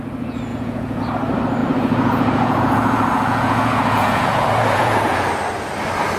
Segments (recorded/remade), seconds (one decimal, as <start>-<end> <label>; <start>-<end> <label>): 0.0-0.5 recorded; 0.5-1.0 remade; 1.0-1.6 recorded; 1.6-5.3 remade; 5.3-6.2 recorded